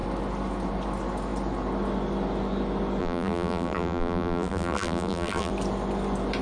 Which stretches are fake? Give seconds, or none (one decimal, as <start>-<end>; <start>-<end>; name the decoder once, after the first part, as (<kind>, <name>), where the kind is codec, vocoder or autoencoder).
3.0-5.5 (vocoder, BigVGAN v2)